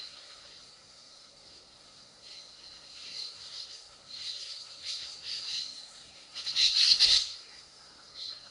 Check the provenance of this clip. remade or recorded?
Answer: remade